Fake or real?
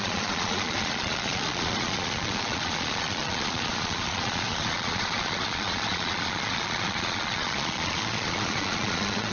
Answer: fake